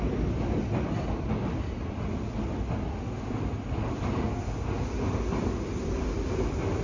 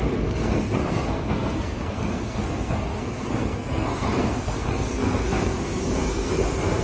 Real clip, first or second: first